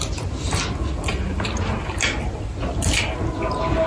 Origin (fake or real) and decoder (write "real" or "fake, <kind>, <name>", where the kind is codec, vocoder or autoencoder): real